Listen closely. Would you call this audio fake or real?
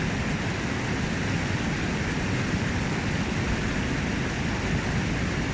real